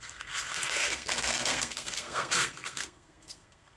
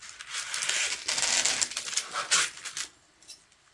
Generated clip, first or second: first